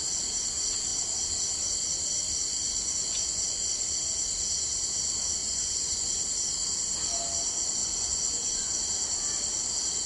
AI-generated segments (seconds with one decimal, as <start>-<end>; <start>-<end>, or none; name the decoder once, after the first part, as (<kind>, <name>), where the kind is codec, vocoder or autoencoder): 2.5-3.7 (vocoder, Vocos); 5.4-6.1; 7.8-8.8